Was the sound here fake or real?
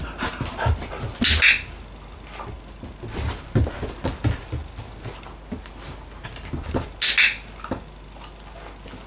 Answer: real